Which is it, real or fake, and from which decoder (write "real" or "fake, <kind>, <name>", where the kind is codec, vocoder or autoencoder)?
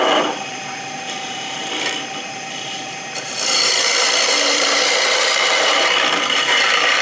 fake, vocoder, BigVGAN v2